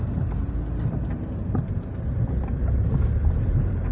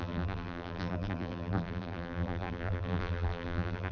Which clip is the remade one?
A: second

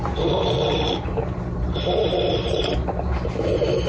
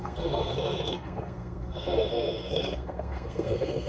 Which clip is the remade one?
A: second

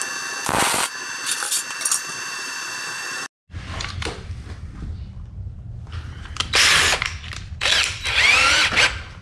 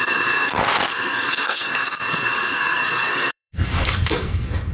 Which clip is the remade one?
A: second